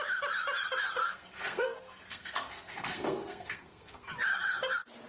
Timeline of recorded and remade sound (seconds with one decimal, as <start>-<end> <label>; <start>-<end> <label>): 0.0-1.0 recorded; 1.0-4.1 remade; 4.1-5.1 recorded